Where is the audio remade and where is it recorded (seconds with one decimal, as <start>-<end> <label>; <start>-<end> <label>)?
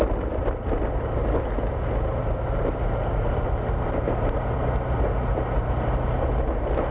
0.0-2.1 recorded; 2.1-6.0 remade; 6.0-6.9 recorded